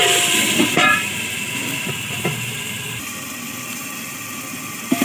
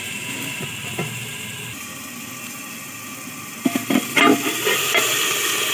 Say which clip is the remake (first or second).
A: first